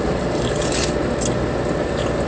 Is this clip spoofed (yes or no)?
no